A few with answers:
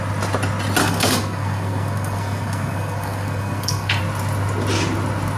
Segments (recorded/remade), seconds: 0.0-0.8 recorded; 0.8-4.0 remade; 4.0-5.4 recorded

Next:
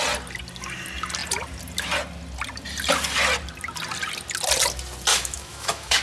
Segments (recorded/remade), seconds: 0.0-5.1 recorded; 5.1-6.0 remade